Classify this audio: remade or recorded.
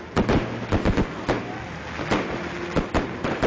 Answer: recorded